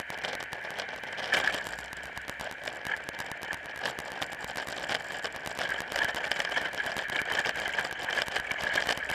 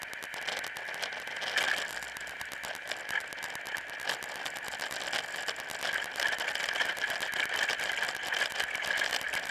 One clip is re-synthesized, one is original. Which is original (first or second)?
second